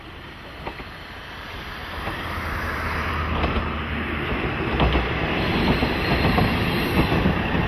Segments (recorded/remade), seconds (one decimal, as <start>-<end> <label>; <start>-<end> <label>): 0.0-7.7 recorded